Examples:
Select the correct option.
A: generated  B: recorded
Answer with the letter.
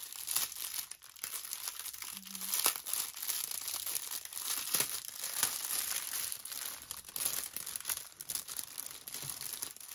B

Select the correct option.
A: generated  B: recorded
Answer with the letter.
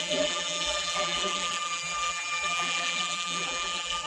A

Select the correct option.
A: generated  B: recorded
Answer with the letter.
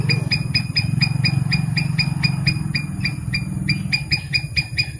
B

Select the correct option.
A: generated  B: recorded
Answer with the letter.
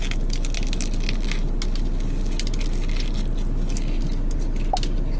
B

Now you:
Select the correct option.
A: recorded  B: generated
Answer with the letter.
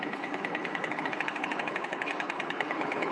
B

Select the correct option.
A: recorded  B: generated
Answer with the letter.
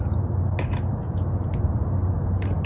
A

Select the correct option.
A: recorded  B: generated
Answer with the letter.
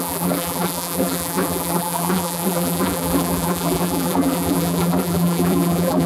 B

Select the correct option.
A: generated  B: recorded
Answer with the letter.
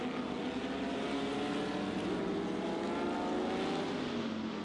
B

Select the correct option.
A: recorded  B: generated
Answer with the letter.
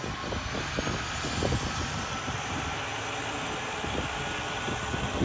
A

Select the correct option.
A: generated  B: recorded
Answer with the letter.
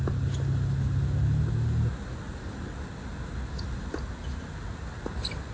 B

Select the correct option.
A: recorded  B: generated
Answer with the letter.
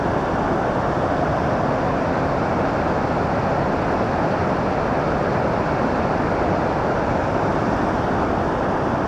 A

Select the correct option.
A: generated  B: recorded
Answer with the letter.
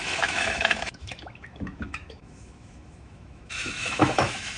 A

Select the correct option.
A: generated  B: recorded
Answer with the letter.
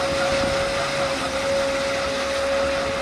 B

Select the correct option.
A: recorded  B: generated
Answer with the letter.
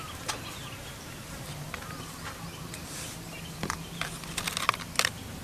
A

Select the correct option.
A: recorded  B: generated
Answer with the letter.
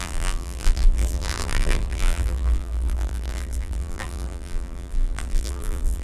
B